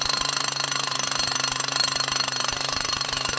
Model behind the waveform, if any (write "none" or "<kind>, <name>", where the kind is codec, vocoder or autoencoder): none